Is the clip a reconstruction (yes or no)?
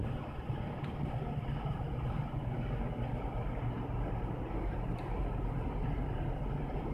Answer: no